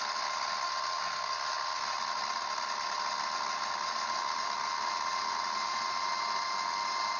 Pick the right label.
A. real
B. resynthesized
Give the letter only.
A